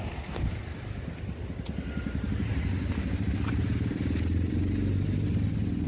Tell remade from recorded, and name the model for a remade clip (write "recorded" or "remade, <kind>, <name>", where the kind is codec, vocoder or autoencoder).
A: recorded